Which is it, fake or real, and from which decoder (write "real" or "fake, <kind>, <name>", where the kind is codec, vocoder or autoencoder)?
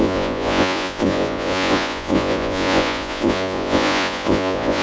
fake, vocoder, Vocos